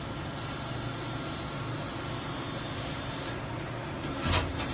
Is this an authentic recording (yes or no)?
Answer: yes